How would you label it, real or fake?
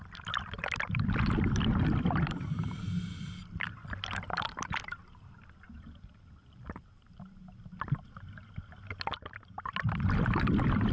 real